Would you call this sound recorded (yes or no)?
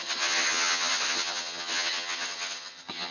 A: no